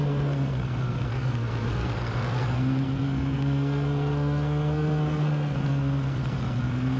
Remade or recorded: remade